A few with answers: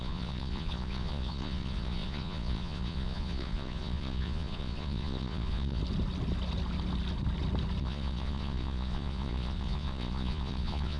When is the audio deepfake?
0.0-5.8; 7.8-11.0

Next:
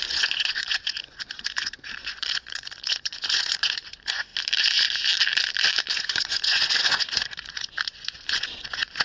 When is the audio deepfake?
0.0-4.3; 5.9-9.0